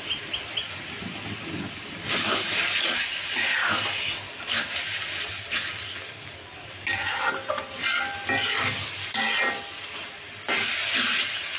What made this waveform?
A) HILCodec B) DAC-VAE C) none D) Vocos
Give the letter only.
C